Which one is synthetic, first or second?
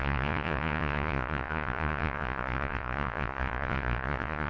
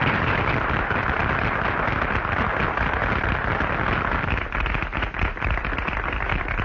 first